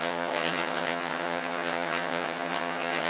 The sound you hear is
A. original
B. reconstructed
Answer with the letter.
B